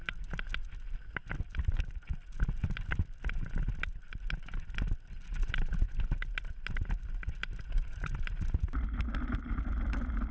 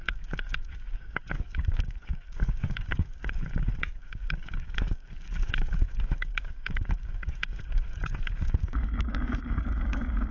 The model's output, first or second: second